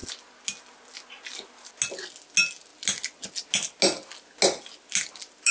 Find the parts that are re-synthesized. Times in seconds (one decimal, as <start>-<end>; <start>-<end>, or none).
none